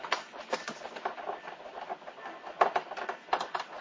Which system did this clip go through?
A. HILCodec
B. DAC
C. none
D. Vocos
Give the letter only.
C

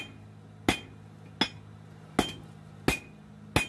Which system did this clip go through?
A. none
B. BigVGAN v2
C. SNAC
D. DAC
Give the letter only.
A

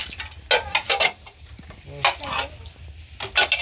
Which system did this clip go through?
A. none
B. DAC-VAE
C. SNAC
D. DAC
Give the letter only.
A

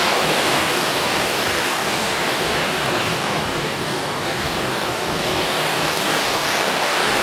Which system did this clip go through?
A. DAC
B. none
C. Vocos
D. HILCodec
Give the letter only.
A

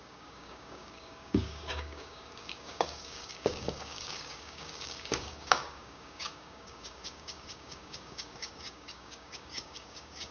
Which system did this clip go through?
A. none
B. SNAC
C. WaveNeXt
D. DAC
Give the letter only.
D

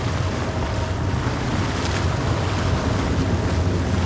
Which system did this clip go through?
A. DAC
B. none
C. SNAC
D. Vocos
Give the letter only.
B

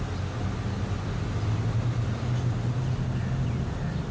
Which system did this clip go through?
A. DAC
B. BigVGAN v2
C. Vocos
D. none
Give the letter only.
D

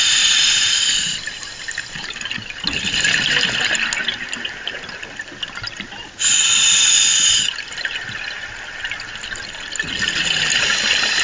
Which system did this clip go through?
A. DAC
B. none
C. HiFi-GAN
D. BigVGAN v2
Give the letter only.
B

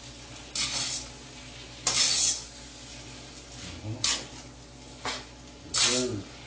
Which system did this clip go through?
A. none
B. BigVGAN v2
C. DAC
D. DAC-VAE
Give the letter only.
A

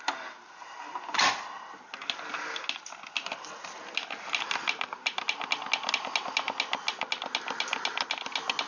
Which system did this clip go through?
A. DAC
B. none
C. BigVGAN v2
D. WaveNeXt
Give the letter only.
B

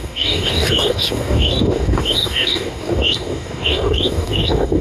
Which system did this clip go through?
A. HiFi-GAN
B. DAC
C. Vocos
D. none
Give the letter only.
B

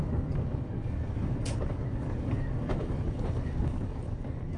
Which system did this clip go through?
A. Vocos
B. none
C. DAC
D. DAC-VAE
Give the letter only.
C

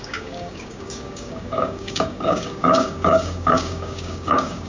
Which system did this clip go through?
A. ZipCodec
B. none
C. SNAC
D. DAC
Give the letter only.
D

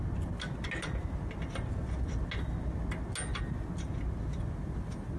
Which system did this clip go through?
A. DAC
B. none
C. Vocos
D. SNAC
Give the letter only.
B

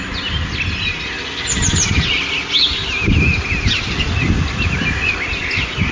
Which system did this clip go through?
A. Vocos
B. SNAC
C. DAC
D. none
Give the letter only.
D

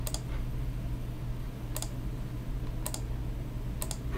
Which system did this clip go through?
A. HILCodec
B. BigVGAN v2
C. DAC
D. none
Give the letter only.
D